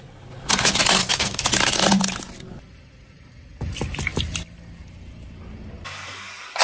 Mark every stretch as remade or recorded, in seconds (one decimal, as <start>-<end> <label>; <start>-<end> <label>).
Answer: 0.0-1.0 recorded; 1.0-1.5 remade; 1.5-6.6 recorded